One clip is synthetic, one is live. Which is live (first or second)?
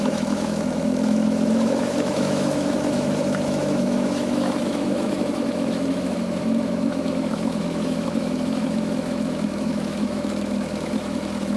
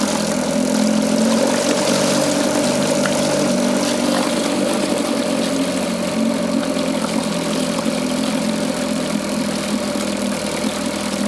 second